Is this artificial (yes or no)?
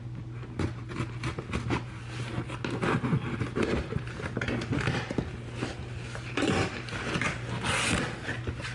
no